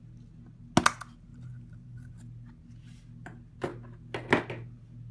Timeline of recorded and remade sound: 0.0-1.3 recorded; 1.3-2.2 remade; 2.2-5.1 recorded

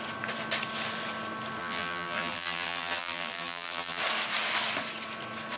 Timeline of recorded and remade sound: 0.0-1.6 recorded; 1.6-4.0 remade; 4.0-5.6 recorded

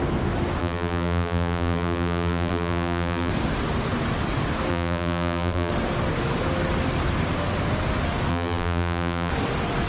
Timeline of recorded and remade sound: 0.0-0.6 recorded; 0.6-3.3 remade; 3.3-4.7 recorded; 4.7-5.7 remade; 5.7-8.3 recorded; 8.3-9.3 remade; 9.3-9.9 recorded

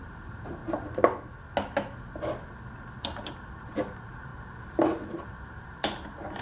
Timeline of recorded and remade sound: 0.0-0.6 remade; 0.6-3.0 recorded; 3.0-4.3 remade; 4.3-5.1 recorded; 5.1-6.4 remade

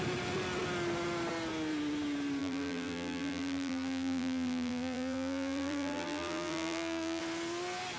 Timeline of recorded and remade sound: 0.0-2.4 recorded; 2.4-7.2 remade; 7.2-8.0 recorded

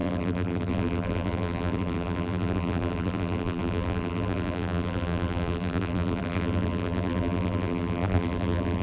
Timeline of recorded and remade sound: 0.0-8.8 remade